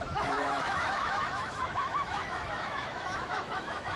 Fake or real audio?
fake